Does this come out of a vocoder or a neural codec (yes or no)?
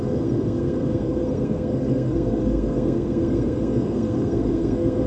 yes